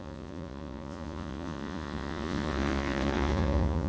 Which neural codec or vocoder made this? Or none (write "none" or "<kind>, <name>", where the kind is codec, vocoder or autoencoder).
vocoder, Vocos